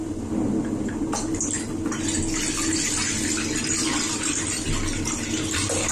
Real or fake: real